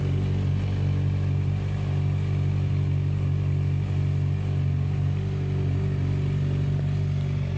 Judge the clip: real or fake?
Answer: real